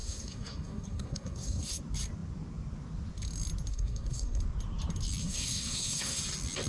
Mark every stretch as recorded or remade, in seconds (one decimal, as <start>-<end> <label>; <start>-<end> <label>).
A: 0.0-1.8 remade; 1.8-3.7 recorded; 3.7-4.4 remade; 4.4-5.2 recorded; 5.2-6.2 remade; 6.2-6.7 recorded